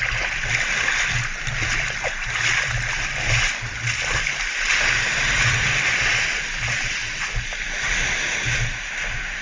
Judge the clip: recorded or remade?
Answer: recorded